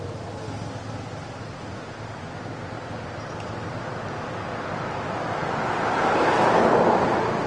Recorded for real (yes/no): yes